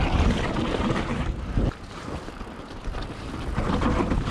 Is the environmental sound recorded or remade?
remade